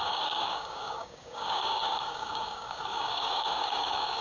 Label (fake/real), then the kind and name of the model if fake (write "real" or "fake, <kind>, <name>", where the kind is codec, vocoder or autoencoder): fake, codec, DAC